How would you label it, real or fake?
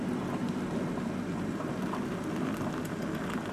real